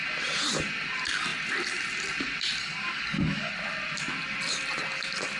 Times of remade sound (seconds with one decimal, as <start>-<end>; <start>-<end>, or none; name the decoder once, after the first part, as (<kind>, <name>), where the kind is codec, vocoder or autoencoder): 2.6-3.5 (codec, DAC)